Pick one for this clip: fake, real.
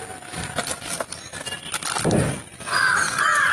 real